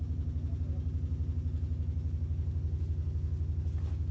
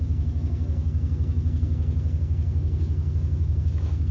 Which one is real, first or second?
first